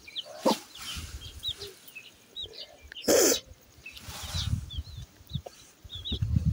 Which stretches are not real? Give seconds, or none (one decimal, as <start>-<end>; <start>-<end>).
0.0-1.4; 5.3-6.5